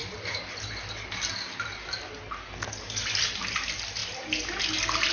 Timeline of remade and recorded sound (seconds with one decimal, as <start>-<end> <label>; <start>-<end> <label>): 0.0-5.1 recorded